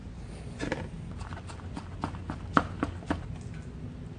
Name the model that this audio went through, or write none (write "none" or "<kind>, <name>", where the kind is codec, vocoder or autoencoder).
none